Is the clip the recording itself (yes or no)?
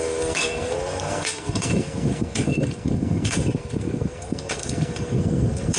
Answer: no